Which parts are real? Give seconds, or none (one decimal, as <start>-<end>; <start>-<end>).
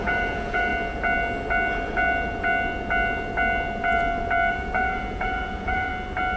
0.7-4.5; 5.9-6.4